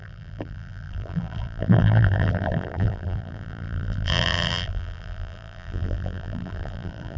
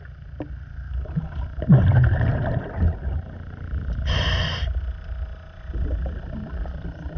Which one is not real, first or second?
first